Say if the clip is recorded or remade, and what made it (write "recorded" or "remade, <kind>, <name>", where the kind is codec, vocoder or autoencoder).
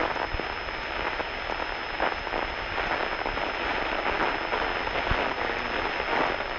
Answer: recorded